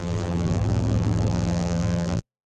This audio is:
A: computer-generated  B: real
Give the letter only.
A